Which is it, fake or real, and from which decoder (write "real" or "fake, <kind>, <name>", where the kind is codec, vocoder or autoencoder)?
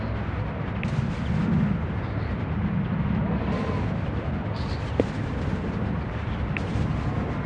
real